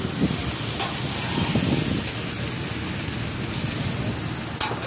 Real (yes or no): yes